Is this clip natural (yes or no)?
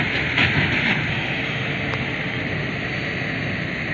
yes